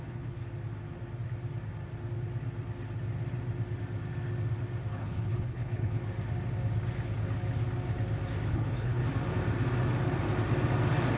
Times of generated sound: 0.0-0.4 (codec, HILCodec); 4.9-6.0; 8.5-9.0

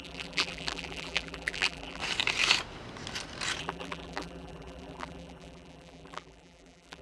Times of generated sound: 0.0-2.0 (vocoder, BigVGAN v2); 3.6-7.0

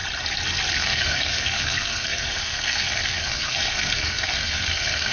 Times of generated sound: 0.7-5.1 (codec, SNAC)

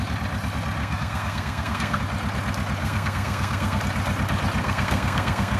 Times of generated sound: 0.8-2.0 (codec, SNAC); 2.8-3.8; 4.6-5.6

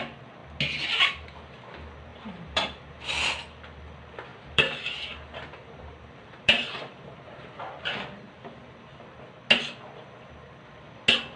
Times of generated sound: 2.1-3.2 (vocoder, BigVGAN v2); 4.3-7.8